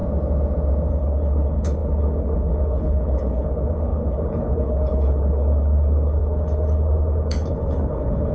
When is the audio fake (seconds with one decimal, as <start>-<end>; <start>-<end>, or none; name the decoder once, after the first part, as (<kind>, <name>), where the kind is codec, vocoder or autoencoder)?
0.9-8.3 (codec, HILCodec)